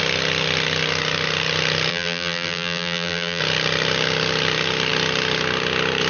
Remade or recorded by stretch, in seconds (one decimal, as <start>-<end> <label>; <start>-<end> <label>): 0.0-1.9 recorded; 1.9-3.4 remade; 3.4-6.1 recorded